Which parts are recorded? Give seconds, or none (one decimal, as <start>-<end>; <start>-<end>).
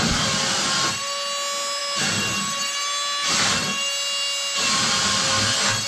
0.0-5.9